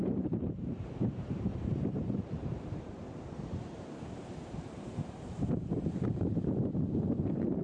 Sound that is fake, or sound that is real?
fake